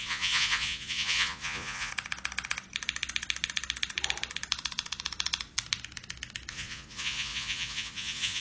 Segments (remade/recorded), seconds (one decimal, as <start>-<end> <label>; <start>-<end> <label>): 0.0-1.9 remade; 1.9-6.5 recorded; 6.5-8.4 remade